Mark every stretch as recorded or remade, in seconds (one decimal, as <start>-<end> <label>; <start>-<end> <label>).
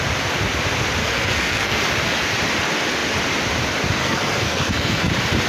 0.0-1.0 recorded; 1.0-1.8 remade; 1.8-4.0 recorded; 4.0-5.1 remade; 5.1-5.5 recorded